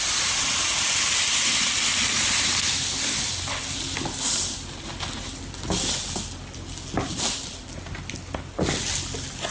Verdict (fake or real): real